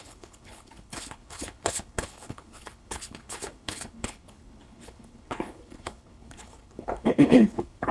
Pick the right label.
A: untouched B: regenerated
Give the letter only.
B